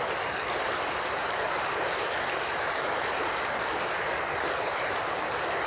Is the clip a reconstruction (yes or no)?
no